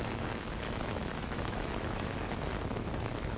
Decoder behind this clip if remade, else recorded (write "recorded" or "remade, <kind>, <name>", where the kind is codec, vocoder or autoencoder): remade, autoencoder, DAC-VAE